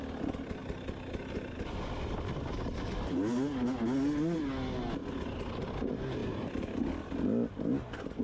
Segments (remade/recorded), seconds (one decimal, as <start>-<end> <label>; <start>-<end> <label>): 0.0-6.2 recorded; 6.2-6.9 remade; 6.9-8.2 recorded